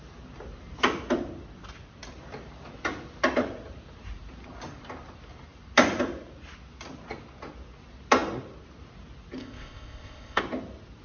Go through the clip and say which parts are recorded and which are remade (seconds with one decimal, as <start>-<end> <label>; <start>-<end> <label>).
0.0-9.4 recorded; 9.4-10.4 remade; 10.4-11.0 recorded